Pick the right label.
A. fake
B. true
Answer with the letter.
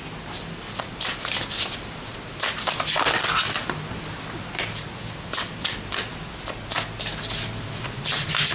B